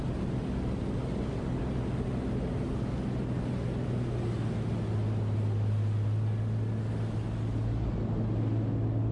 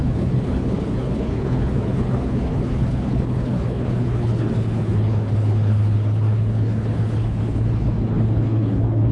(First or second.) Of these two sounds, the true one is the first